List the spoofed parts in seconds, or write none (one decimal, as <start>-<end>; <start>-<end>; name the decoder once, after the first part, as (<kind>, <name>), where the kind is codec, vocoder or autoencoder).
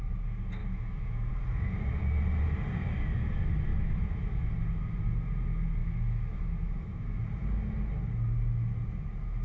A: 0.6-1.3 (autoencoder, DAC-VAE); 3.7-4.5; 5.8-7.2